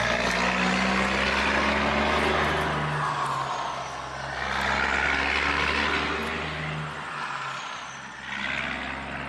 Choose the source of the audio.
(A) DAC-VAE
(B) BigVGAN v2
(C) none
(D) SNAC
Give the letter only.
C